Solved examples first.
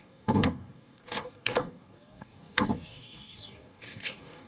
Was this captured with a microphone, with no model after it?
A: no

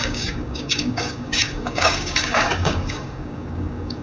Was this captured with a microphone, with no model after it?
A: no